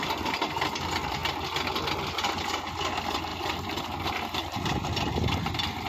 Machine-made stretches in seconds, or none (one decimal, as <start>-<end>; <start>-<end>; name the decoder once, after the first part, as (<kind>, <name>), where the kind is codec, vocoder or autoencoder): 3.3-3.8 (vocoder, BigVGAN v2)